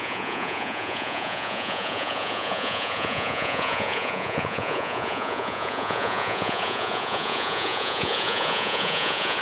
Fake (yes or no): yes